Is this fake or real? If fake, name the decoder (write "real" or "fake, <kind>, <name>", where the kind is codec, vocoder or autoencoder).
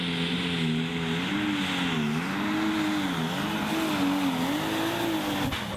real